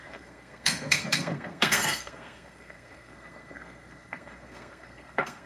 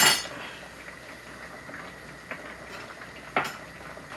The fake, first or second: first